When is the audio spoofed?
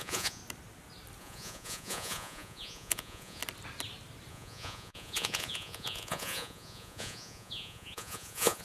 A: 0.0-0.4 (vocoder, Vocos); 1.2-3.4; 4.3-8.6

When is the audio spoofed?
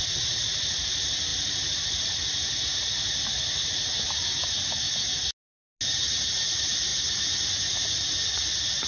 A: none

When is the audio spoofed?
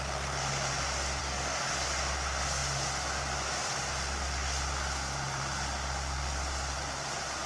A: 1.2-1.7 (codec, SNAC)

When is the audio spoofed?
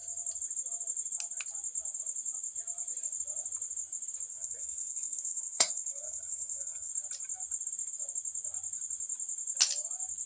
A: 4.3-6.9 (codec, SNAC)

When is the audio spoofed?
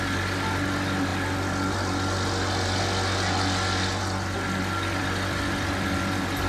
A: none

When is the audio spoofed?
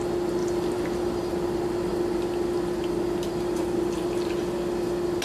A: 0.4-1.3 (vocoder, BigVGAN v2)